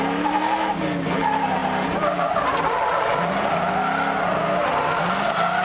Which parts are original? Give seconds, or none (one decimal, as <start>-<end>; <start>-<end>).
0.0-5.6